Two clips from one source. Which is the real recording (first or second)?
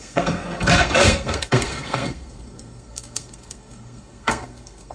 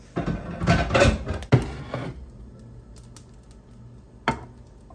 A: second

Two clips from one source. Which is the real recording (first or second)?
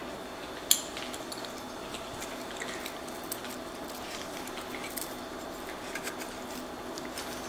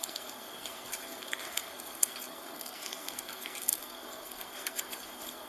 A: first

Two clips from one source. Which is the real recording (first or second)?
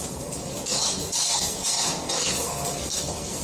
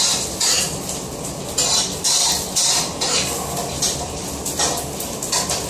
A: second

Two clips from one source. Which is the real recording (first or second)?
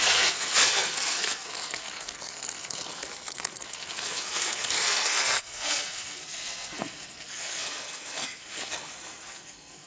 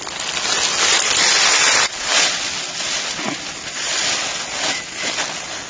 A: second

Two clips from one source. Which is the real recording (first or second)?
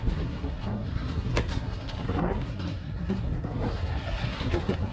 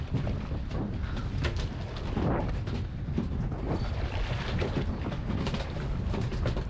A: second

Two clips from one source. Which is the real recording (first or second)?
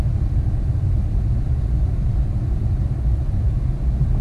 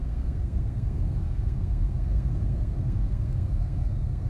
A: first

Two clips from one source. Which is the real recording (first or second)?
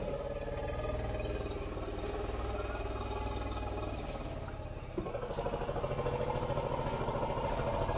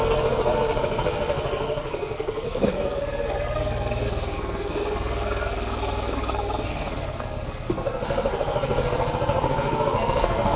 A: first